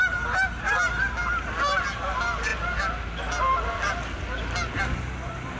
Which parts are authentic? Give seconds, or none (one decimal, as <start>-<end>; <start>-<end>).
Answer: 0.0-5.6